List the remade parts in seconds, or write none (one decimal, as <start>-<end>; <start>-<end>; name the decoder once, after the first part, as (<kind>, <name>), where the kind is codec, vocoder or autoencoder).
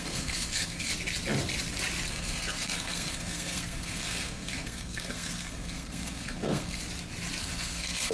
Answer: 0.0-0.9 (codec, SNAC); 2.1-6.8; 7.4-8.1